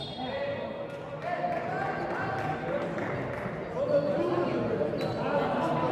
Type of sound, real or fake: real